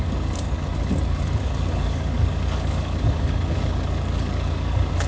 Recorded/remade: remade